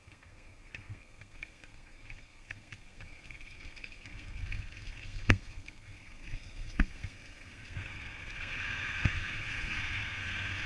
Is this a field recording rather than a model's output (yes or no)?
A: no